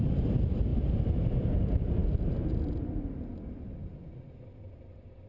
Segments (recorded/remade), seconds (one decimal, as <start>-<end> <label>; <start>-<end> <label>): 0.0-5.3 recorded